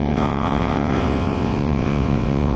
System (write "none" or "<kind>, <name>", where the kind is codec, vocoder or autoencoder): vocoder, WaveNeXt